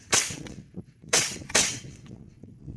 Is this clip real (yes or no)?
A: no